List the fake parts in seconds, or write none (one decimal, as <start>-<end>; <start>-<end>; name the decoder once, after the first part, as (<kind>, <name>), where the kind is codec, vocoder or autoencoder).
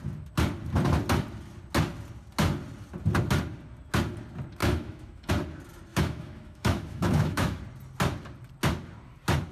4.6-5.3 (autoencoder, DAC-VAE); 5.9-7.6